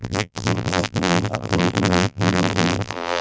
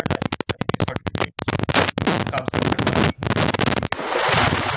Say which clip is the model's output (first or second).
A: first